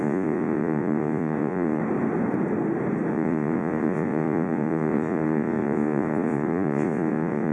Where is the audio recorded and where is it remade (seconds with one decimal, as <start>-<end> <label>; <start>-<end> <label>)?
0.0-1.8 remade; 1.8-3.1 recorded; 3.1-7.5 remade